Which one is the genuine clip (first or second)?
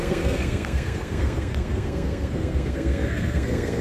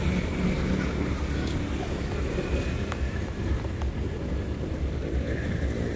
second